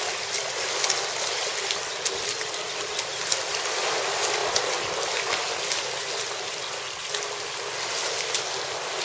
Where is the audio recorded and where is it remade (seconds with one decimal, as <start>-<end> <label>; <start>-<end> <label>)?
0.0-9.0 recorded